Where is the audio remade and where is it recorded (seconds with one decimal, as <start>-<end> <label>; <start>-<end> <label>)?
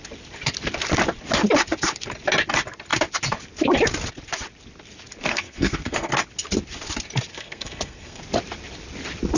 0.0-5.3 recorded; 5.3-6.1 remade; 6.1-7.3 recorded; 7.3-8.2 remade; 8.2-9.4 recorded